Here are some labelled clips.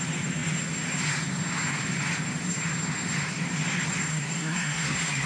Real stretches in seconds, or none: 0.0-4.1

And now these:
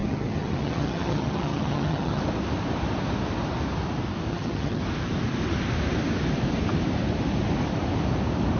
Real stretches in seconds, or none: 2.2-4.3; 4.8-8.6

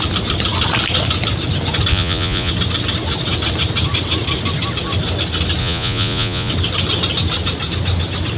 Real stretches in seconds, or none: 0.0-1.9; 2.5-5.6; 6.5-8.4

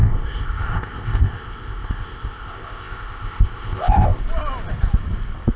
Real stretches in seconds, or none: 4.2-5.6

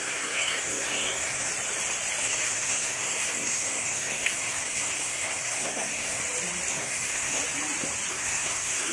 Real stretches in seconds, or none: 1.5-2.2; 6.2-6.7; 7.4-8.1

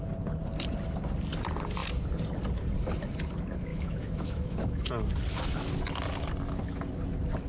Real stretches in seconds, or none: 0.0-3.7; 4.9-7.5

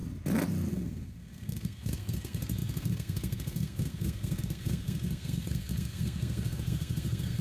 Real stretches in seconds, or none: 0.0-0.7